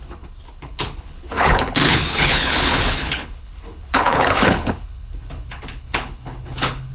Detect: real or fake fake